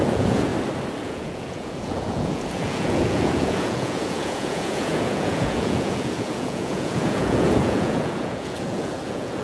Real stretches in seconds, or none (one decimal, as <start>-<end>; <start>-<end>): 0.5-1.0